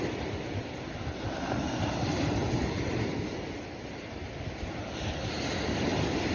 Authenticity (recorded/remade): recorded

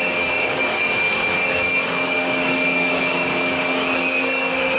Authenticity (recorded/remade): remade